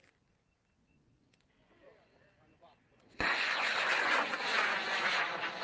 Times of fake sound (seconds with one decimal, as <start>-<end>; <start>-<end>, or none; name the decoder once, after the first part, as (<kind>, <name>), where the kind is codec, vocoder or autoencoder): 0.0-5.6 (vocoder, Vocos)